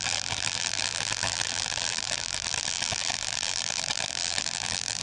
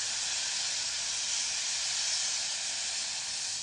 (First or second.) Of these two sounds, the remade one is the first